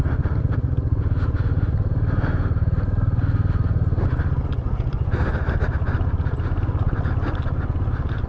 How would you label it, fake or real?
real